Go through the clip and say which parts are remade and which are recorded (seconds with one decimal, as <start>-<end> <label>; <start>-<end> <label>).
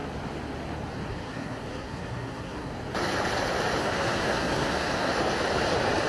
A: 0.0-1.1 recorded; 1.1-2.7 remade; 2.7-3.8 recorded; 3.8-5.1 remade; 5.1-6.1 recorded